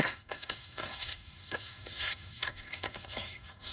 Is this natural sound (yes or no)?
no